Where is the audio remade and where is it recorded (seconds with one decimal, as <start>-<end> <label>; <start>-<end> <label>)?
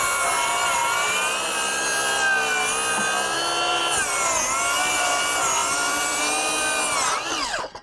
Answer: 0.0-5.6 recorded; 5.6-6.2 remade; 6.2-7.8 recorded